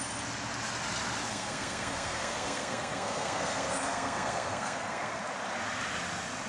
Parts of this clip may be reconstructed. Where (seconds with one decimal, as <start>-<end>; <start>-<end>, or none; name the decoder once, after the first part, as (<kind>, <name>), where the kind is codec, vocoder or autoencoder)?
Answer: 1.3-5.2 (codec, SNAC)